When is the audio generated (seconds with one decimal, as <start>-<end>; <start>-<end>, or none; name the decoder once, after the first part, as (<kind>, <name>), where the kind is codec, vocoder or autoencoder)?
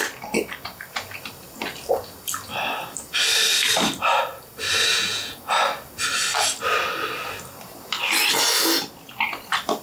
4.9-5.5 (vocoder, Vocos)